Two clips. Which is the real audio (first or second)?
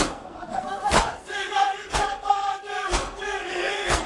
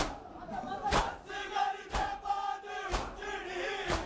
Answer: second